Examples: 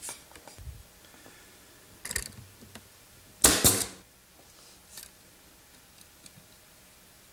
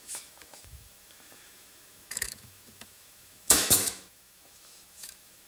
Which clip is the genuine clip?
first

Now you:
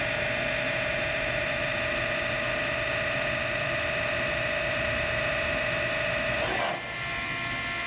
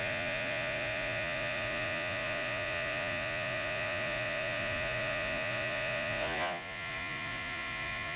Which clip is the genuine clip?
first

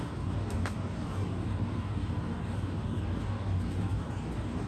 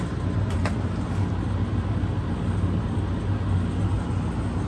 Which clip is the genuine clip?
second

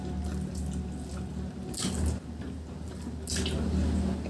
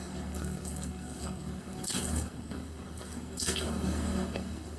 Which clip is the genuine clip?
first